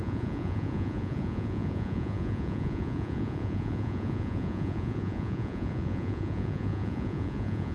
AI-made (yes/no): yes